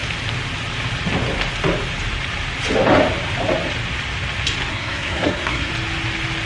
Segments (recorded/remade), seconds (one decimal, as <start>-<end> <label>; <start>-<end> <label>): 0.0-4.7 recorded; 4.7-5.7 remade; 5.7-6.5 recorded